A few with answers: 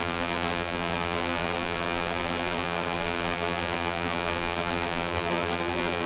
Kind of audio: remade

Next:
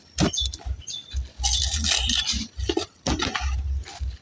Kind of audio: recorded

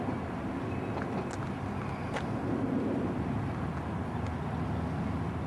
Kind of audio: recorded